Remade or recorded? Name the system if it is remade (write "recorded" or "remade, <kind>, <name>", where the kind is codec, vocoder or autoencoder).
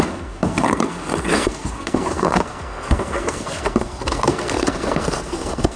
remade, codec, SNAC